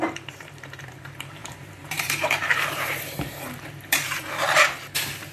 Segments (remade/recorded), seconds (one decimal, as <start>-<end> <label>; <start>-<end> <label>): 0.0-5.3 remade